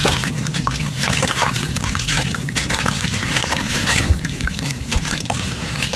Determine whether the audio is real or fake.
fake